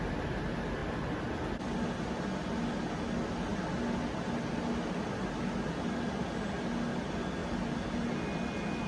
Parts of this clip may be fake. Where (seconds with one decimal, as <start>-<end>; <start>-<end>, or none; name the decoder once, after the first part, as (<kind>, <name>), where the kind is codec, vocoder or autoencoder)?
none